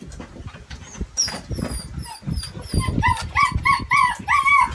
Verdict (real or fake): real